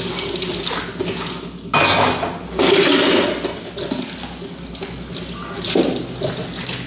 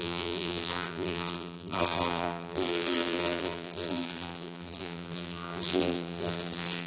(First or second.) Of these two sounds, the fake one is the second